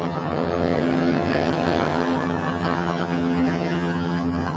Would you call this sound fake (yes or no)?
yes